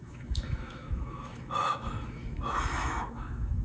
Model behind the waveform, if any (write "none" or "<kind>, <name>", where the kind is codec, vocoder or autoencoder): autoencoder, DAC-VAE